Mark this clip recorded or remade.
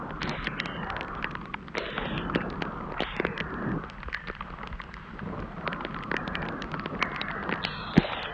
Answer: recorded